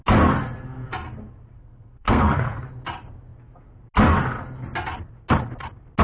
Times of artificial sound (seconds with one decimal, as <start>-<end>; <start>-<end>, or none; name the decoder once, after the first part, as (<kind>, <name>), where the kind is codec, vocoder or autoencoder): 1.5-2.6 (codec, SNAC)